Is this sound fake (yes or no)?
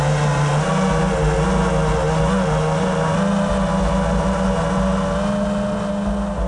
no